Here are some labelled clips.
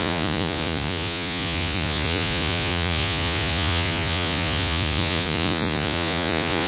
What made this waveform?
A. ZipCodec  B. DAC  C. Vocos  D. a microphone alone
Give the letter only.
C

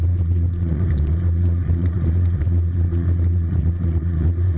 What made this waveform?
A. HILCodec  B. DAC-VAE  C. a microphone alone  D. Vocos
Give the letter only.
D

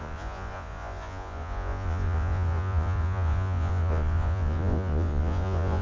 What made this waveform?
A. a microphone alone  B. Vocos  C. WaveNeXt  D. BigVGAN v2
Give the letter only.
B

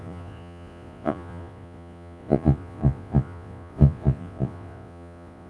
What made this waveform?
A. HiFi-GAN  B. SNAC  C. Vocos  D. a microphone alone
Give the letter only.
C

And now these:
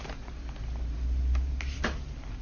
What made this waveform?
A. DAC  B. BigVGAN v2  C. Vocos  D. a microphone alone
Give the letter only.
D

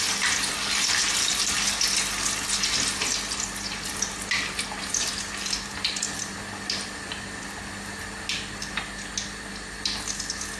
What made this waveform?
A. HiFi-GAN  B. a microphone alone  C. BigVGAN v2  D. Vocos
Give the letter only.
B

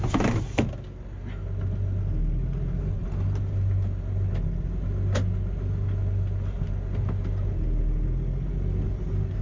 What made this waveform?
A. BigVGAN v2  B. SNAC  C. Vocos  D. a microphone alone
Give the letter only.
D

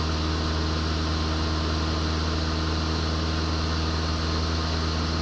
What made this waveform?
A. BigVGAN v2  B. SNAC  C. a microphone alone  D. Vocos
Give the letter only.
C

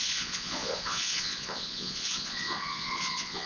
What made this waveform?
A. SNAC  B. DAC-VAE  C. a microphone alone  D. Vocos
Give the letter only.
D